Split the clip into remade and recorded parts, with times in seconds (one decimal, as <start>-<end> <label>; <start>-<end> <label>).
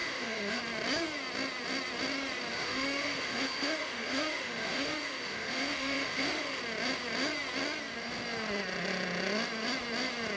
0.0-0.6 remade; 0.6-2.5 recorded; 2.5-6.6 remade; 6.6-10.4 recorded